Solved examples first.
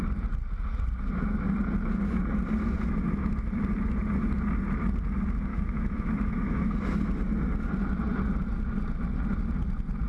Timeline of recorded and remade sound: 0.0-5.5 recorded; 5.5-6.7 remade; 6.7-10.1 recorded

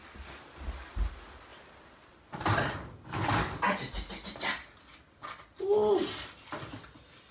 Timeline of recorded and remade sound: 0.0-7.3 recorded

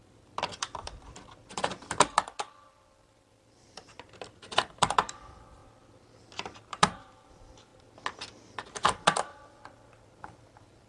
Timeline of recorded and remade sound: 0.0-5.6 remade; 5.6-6.6 recorded; 6.6-7.7 remade; 7.7-8.5 recorded; 8.5-10.9 remade

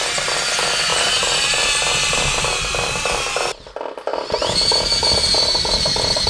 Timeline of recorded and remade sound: 0.0-0.9 recorded; 0.9-1.8 remade; 1.8-6.3 recorded

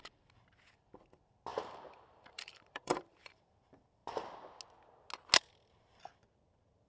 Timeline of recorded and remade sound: 0.0-1.5 recorded; 1.5-3.4 remade; 3.4-6.9 recorded

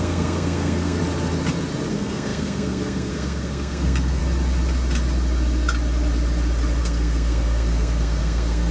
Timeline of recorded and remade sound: 0.0-1.0 remade; 1.0-1.9 recorded; 1.9-4.2 remade; 4.2-6.8 recorded; 6.8-8.7 remade

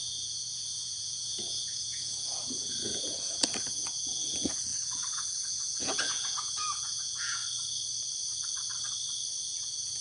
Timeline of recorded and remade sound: 0.0-7.4 remade; 7.4-9.6 recorded; 9.6-10.0 remade

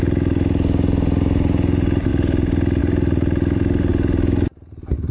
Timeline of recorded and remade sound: 0.0-2.1 remade; 2.1-2.8 recorded; 2.8-3.9 remade; 3.9-5.1 recorded